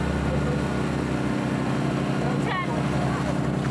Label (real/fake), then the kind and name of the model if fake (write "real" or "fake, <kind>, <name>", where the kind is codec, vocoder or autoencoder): real